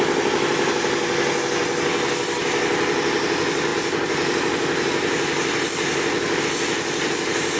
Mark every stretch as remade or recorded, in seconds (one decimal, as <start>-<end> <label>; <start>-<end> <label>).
0.0-7.6 recorded